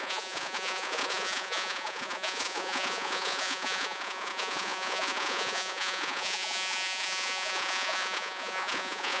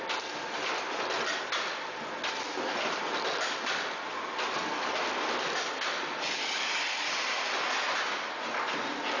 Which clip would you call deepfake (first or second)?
first